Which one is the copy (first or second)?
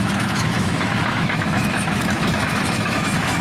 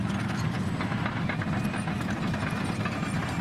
first